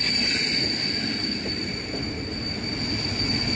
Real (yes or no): yes